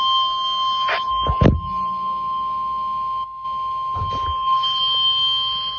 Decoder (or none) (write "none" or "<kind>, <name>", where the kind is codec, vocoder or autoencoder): none